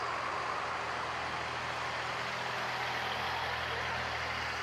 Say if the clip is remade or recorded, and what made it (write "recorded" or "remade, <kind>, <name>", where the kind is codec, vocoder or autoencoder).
recorded